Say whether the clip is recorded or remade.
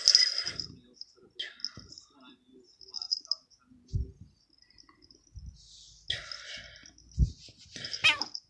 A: recorded